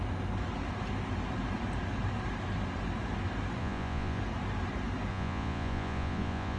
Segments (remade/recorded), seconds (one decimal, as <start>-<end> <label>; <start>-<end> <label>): 0.0-3.6 recorded; 3.6-4.2 remade; 4.2-5.1 recorded; 5.1-6.6 remade